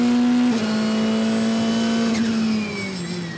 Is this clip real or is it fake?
real